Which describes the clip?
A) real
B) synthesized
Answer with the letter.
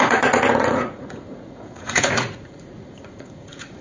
B